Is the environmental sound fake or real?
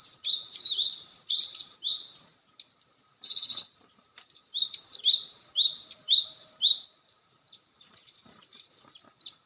fake